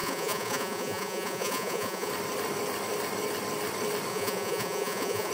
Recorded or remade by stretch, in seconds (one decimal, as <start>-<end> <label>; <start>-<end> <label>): 0.0-2.1 remade; 2.1-4.1 recorded; 4.1-5.3 remade